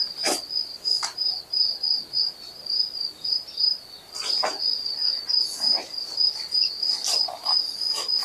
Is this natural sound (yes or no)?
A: yes